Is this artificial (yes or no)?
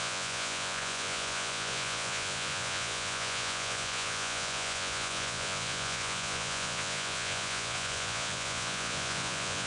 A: yes